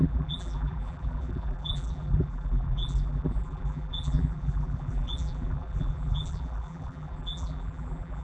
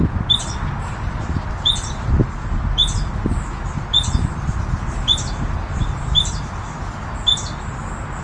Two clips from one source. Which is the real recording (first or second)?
second